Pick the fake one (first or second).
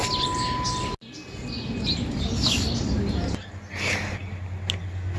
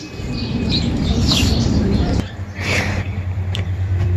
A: second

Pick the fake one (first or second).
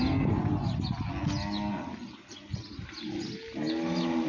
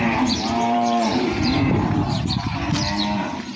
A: second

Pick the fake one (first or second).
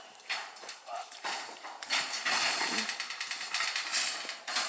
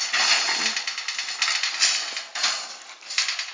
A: first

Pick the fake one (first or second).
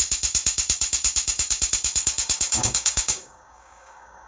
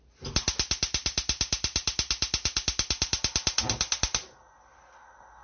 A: first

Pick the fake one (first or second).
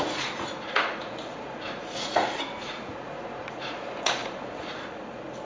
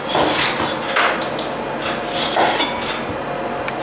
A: first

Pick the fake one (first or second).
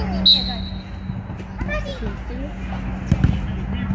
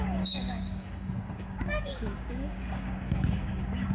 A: second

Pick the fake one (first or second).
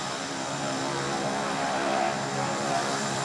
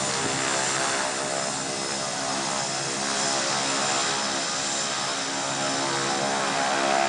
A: first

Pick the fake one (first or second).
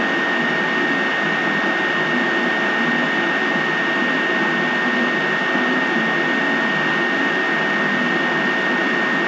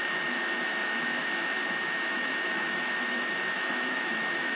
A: second